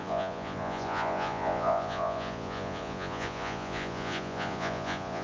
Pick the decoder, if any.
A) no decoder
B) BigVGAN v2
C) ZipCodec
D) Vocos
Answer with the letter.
D